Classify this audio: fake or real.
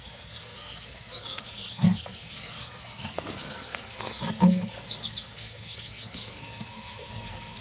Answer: fake